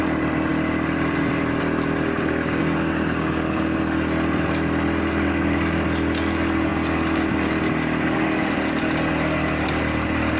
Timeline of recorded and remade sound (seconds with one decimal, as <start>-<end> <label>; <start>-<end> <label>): 0.0-10.4 recorded